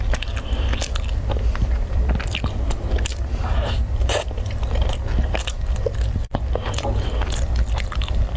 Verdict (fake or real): fake